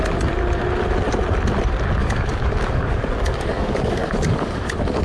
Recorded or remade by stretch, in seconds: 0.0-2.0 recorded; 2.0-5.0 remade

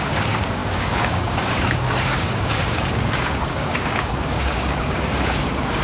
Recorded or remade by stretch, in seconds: 0.0-5.8 remade

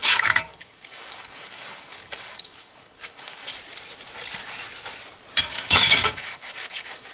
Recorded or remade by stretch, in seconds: 0.0-3.5 remade; 3.5-5.4 recorded; 5.4-7.1 remade

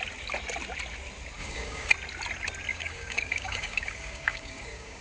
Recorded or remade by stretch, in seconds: 0.0-1.4 recorded; 1.4-1.9 remade; 1.9-2.7 recorded; 2.7-5.0 remade

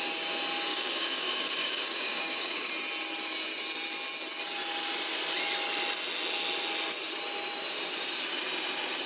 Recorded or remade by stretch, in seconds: 0.0-0.7 recorded; 0.7-2.7 remade; 2.7-9.1 recorded